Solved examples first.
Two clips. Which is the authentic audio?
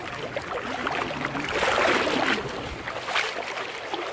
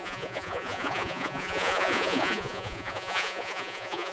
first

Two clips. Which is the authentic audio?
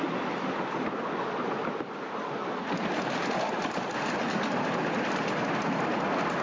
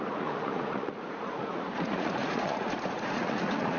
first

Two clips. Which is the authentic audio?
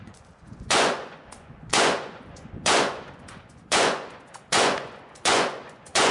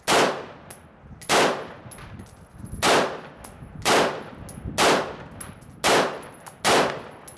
second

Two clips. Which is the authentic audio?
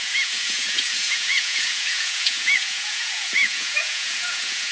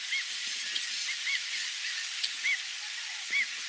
second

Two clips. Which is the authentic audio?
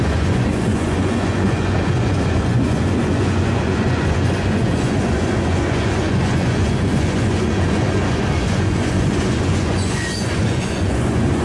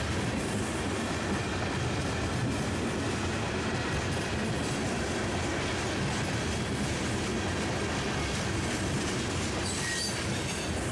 second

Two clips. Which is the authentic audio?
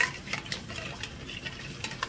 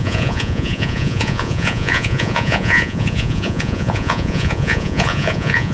first